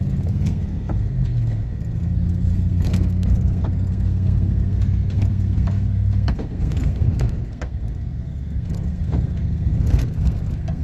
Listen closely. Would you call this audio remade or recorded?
remade